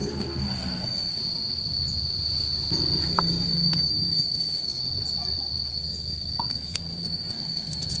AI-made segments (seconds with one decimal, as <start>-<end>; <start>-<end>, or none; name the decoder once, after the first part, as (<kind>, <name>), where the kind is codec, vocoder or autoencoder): 0.0-1.2 (codec, SNAC); 3.0-4.8; 5.7-8.0